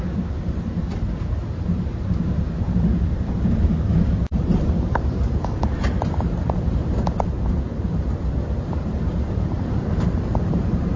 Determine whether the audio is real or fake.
fake